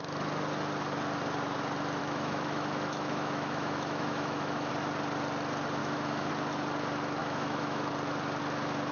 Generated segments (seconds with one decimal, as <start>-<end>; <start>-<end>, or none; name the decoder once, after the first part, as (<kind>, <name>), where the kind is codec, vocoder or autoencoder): 2.0-4.7 (autoencoder, DAC-VAE); 5.8-6.3; 7.2-7.9